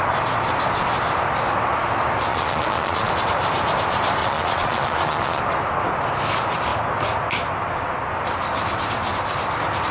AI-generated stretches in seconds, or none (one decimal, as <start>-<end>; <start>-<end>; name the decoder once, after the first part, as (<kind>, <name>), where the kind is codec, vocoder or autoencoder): 2.3-3.1 (vocoder, Vocos); 4.2-5.4